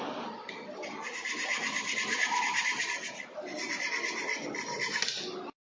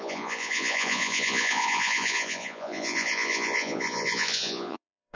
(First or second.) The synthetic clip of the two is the second